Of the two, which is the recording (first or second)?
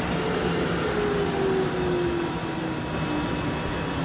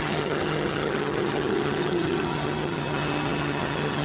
first